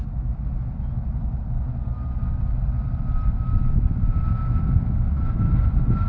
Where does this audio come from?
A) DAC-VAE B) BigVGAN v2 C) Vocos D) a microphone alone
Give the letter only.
D